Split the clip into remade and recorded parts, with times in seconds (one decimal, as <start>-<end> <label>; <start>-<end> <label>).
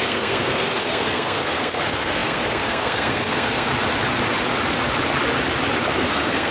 0.0-3.7 remade; 3.7-6.1 recorded; 6.1-6.5 remade